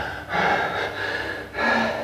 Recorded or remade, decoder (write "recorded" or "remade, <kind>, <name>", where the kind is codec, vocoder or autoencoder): recorded